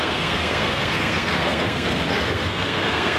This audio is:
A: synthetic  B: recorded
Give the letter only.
A